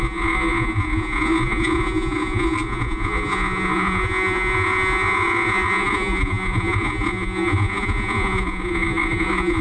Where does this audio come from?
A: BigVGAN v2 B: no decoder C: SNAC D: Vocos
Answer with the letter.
D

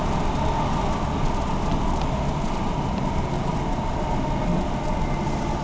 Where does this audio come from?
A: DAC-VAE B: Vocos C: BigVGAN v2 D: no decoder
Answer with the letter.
D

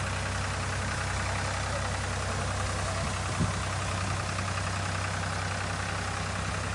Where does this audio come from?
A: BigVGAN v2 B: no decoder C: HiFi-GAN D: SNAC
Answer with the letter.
B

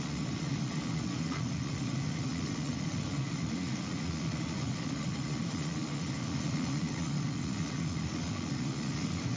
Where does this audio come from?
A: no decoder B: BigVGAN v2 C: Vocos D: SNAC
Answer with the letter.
C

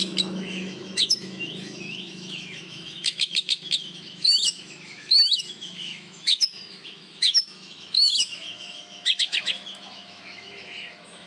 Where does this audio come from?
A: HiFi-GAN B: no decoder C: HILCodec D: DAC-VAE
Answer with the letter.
D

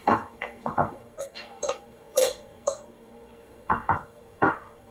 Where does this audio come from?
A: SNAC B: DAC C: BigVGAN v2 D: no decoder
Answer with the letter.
A